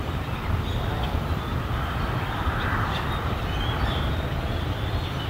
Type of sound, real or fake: fake